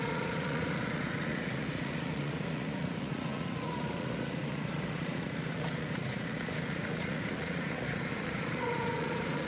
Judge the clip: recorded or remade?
remade